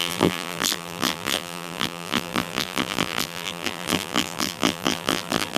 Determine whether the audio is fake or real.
fake